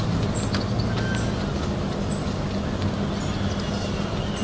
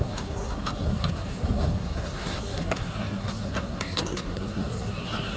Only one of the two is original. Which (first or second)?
first